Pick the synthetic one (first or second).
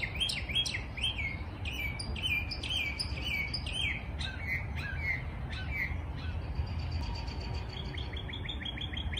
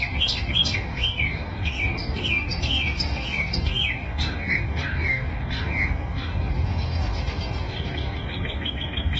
second